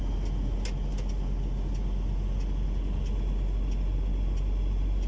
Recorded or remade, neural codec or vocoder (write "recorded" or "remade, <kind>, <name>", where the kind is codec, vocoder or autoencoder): recorded